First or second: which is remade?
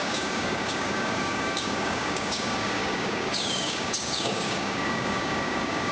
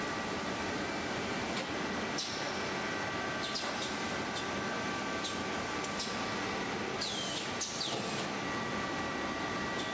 first